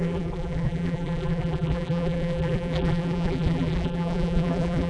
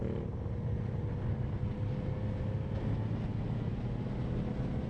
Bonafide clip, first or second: second